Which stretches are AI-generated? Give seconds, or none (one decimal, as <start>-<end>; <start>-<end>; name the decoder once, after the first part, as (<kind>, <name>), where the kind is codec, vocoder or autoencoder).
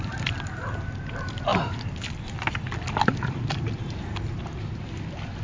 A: none